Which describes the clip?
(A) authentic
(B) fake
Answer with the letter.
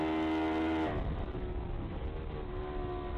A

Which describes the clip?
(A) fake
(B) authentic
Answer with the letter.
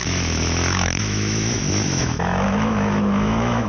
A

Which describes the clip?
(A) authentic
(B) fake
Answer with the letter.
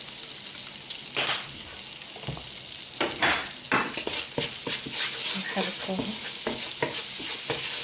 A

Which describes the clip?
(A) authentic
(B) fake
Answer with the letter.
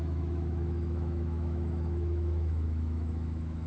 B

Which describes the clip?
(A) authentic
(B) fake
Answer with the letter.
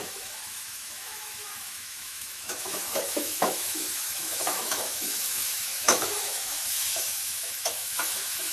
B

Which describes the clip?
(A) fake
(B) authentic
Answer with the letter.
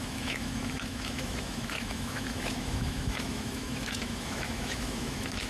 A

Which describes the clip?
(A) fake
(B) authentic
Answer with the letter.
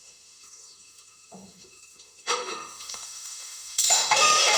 A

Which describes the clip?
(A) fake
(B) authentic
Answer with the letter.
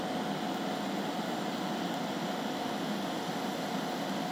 B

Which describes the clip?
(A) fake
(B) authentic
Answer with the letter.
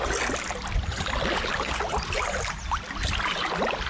B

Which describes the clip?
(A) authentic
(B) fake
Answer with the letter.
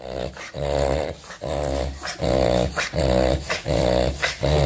A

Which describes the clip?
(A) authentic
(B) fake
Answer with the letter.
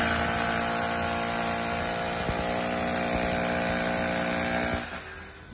A